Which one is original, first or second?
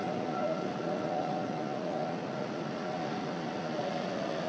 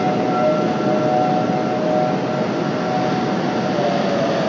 second